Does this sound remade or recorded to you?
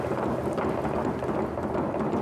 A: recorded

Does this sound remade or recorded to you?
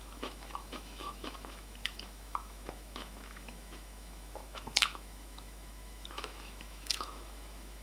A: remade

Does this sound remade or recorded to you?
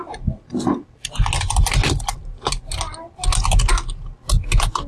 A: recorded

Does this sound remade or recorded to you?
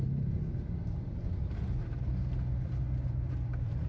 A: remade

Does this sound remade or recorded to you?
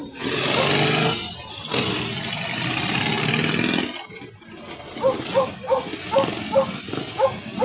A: recorded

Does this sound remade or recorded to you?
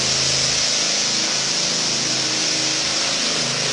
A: recorded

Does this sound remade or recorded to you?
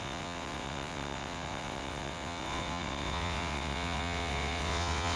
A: remade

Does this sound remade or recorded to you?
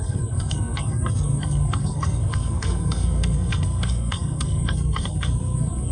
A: remade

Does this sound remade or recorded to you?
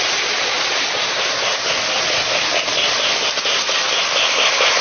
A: recorded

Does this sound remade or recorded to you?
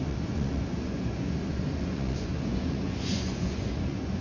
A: remade